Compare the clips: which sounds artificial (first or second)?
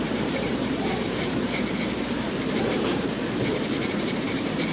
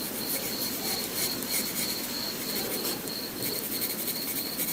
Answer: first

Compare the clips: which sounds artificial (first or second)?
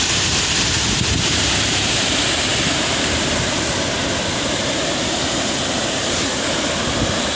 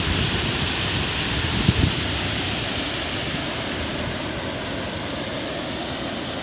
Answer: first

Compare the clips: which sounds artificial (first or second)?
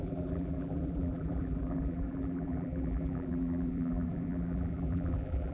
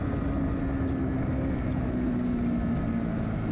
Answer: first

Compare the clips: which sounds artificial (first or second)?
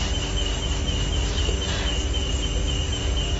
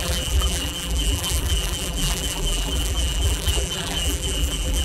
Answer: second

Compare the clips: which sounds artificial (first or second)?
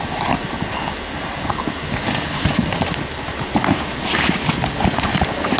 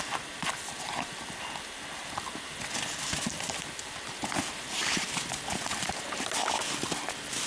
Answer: second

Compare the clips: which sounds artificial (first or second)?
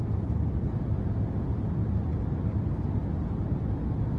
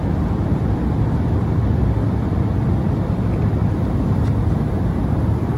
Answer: second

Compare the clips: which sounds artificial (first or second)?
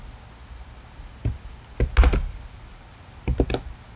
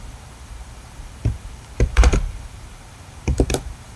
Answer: second